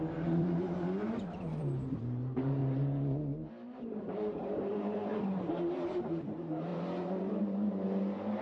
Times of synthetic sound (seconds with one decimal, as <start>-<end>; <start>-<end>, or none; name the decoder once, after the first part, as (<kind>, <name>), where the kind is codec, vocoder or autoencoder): 0.0-2.6 (vocoder, BigVGAN v2); 3.9-5.1; 5.8-6.7; 7.3-8.4